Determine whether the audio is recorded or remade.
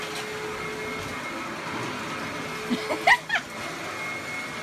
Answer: recorded